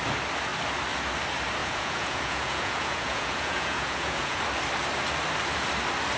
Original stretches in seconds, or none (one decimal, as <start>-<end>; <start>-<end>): 0.0-1.6; 4.4-6.2